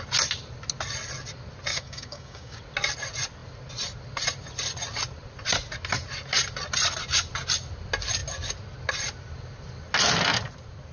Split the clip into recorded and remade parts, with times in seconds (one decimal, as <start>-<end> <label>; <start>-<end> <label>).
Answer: 0.0-1.7 recorded; 1.7-2.6 remade; 2.6-10.9 recorded